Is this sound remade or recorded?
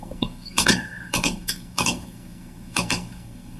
remade